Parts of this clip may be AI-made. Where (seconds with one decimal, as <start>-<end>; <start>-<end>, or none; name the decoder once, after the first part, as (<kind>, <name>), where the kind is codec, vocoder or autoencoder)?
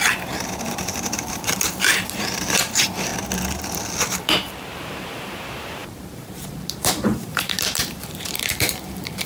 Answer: 0.0-3.1 (vocoder, BigVGAN v2); 4.1-9.3